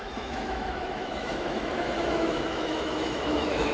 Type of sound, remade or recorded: remade